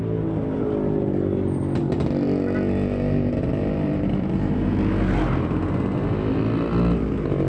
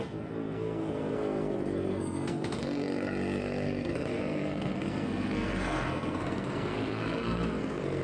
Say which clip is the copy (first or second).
second